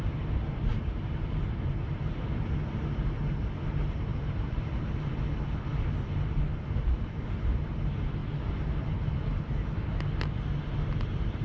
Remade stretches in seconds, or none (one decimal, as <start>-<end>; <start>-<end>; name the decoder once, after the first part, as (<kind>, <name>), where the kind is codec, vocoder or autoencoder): 0.7-1.9 (vocoder, BigVGAN v2); 4.1-4.6; 8.2-9.5